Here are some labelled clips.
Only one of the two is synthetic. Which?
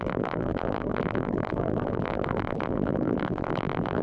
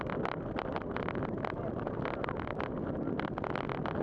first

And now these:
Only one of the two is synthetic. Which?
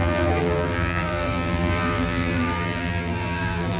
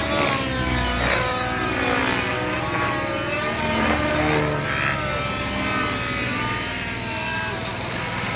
first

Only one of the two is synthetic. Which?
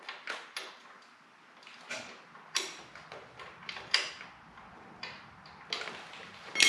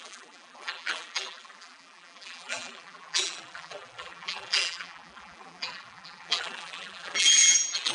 second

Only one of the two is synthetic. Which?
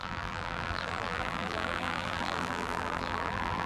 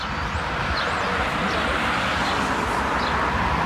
first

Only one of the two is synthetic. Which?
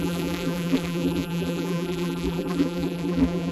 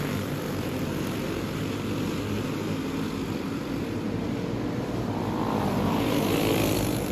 first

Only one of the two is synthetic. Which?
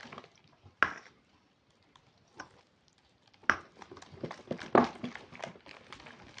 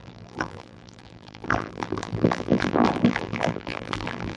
second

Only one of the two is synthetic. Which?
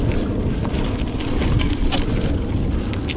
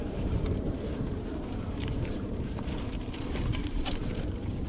second